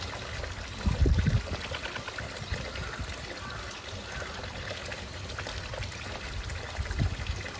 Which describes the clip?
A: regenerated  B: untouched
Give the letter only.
B